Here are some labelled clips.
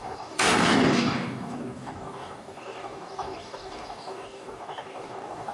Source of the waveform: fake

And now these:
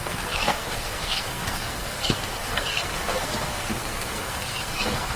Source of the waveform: fake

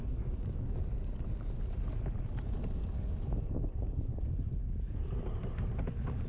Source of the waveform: real